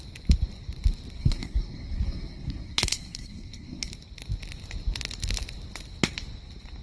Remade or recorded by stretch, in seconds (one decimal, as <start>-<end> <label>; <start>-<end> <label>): 0.0-1.2 recorded; 1.2-3.9 remade; 3.9-6.8 recorded